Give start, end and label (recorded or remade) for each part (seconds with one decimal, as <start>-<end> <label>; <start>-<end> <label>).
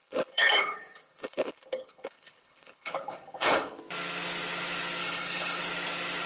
0.0-3.8 remade; 3.8-5.0 recorded; 5.0-5.6 remade; 5.6-6.3 recorded